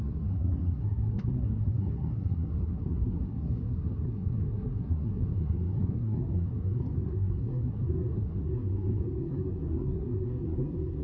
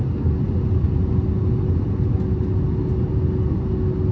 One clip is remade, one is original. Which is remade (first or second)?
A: first